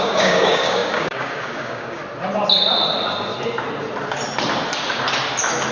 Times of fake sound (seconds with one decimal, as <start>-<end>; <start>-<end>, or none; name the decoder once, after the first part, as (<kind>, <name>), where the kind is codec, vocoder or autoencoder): 0.0-2.0 (codec, DAC)